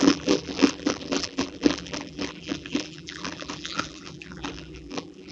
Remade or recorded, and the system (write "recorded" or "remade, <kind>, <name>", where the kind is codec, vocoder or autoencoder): remade, vocoder, BigVGAN v2